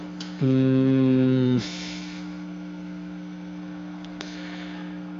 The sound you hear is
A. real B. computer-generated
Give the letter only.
B